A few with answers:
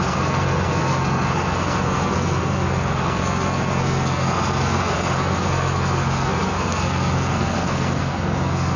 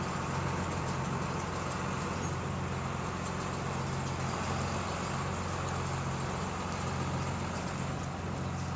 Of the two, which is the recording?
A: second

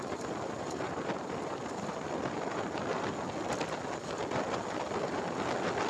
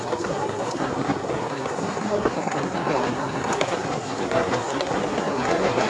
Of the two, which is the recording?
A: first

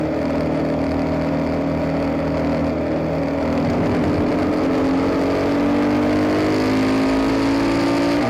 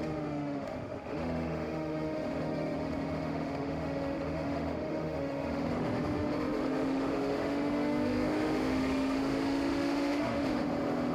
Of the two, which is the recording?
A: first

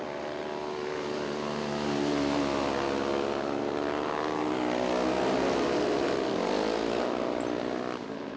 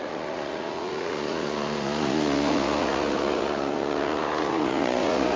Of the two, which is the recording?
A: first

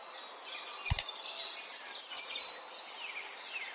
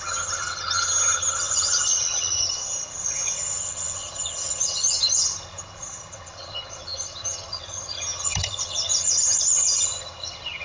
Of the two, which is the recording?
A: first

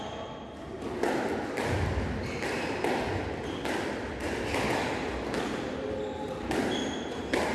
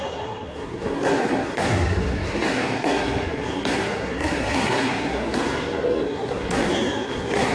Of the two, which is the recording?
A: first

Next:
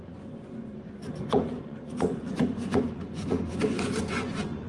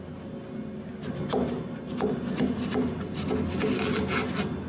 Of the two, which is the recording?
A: second